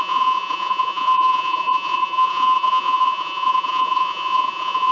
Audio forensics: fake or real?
fake